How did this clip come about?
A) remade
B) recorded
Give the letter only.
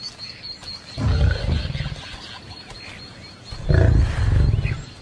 B